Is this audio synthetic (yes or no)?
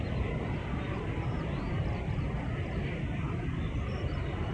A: no